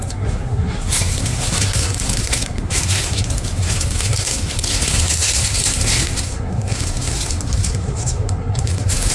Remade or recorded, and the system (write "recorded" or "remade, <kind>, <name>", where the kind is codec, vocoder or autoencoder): remade, codec, SNAC